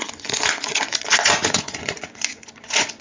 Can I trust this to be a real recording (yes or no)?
no